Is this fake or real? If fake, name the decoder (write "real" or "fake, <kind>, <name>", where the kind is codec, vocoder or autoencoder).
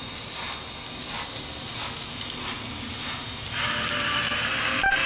real